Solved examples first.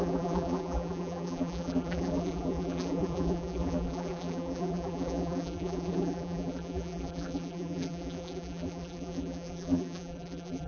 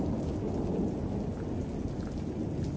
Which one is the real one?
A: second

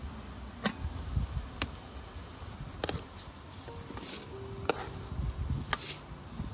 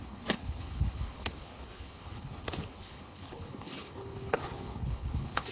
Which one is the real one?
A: first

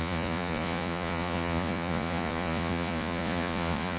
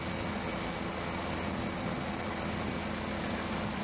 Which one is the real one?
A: second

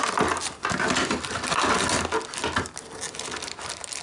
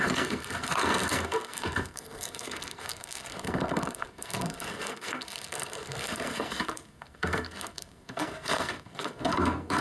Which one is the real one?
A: first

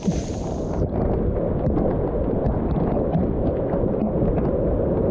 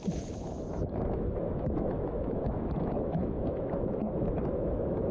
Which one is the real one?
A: first